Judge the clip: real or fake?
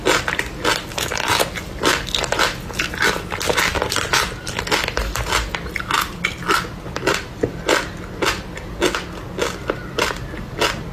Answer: real